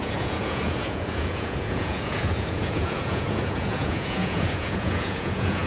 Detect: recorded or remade remade